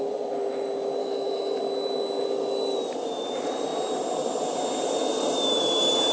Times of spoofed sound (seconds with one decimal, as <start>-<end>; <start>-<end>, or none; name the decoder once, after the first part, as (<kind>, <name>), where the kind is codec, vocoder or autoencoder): 1.0-1.6 (autoencoder, DAC-VAE)